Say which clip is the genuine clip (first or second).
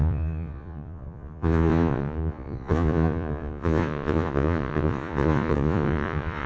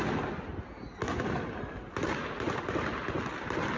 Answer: second